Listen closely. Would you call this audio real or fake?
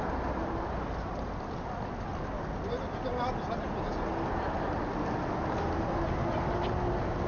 real